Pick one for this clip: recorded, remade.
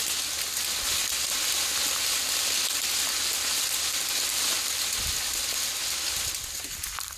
recorded